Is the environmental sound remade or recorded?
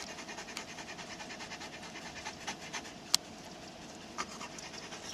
recorded